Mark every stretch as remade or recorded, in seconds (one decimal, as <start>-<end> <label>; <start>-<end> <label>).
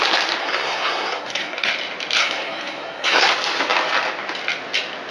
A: 0.0-0.4 recorded; 0.4-1.7 remade; 1.7-2.2 recorded; 2.2-3.3 remade; 3.3-5.1 recorded